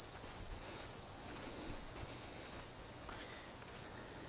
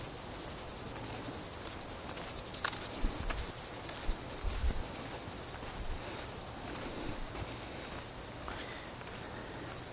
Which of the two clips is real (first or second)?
second